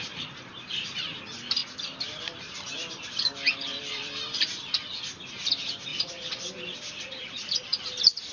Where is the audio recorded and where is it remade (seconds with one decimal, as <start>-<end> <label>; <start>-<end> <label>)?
0.0-1.6 recorded; 1.6-4.7 remade; 4.7-5.9 recorded; 5.9-7.8 remade; 7.8-8.3 recorded